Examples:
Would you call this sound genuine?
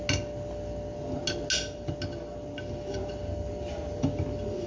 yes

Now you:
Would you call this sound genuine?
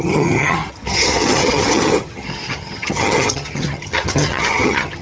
no